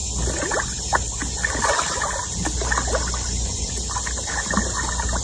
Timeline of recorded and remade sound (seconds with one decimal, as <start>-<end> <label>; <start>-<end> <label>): 0.0-5.2 recorded